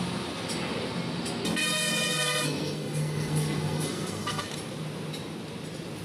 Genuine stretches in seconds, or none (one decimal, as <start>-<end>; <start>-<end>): 0.0-1.6; 4.4-6.0